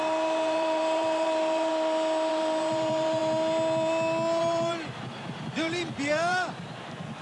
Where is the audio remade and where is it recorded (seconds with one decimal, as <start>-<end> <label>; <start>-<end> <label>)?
0.0-1.7 remade; 1.7-2.3 recorded; 2.3-3.2 remade; 3.2-4.4 recorded; 4.4-7.2 remade